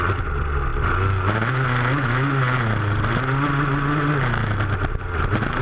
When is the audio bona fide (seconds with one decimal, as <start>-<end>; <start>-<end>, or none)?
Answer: 0.0-5.6